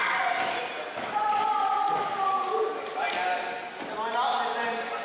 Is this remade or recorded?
recorded